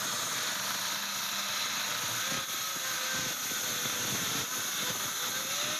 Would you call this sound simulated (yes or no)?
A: no